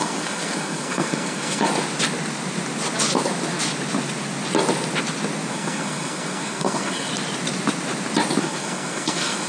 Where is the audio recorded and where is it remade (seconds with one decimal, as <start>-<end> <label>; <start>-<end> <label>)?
0.0-1.7 remade; 1.7-5.5 recorded; 5.5-7.1 remade; 7.1-8.4 recorded; 8.4-9.5 remade